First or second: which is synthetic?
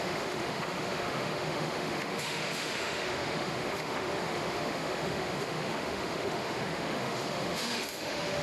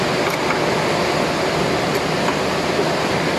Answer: first